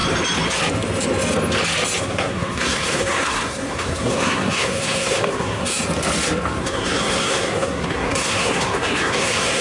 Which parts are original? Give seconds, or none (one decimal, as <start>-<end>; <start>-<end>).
0.0-2.0; 5.7-6.6